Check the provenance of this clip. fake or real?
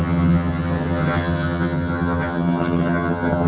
fake